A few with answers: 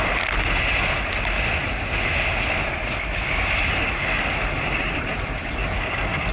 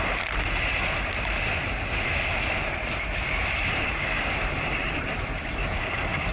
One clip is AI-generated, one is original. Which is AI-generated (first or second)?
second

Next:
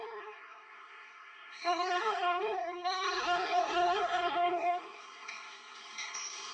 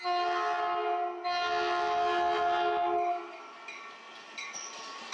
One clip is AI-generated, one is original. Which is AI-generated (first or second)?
first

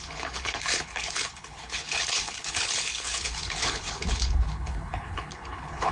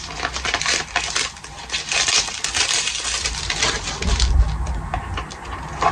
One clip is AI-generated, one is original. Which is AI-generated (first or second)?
first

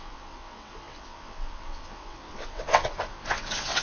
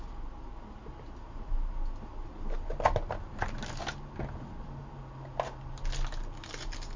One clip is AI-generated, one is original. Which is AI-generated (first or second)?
first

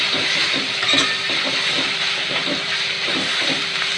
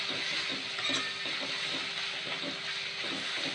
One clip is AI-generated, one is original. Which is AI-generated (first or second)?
first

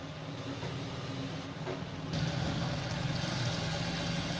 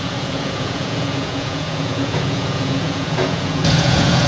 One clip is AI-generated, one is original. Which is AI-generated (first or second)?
second